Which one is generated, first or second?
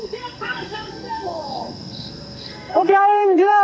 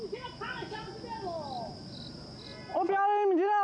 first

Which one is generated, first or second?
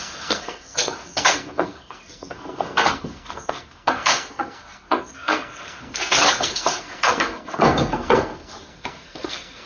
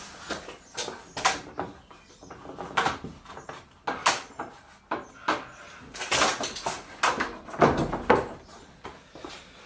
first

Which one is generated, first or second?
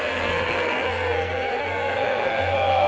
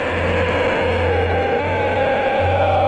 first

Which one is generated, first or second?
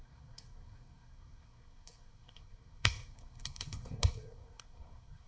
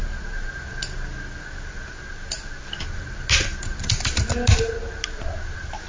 first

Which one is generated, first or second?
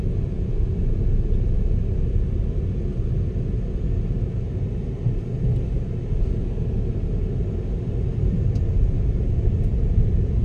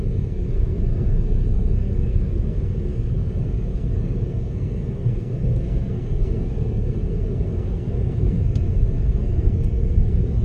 second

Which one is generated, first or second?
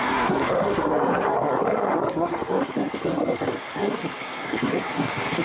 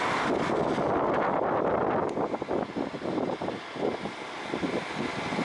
first